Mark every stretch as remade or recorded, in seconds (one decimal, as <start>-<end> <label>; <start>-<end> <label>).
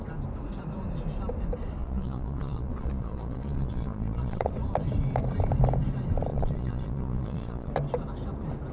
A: 0.0-1.8 recorded; 1.8-4.5 remade; 4.5-6.3 recorded; 6.3-7.7 remade; 7.7-8.7 recorded